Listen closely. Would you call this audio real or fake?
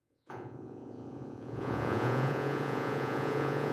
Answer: fake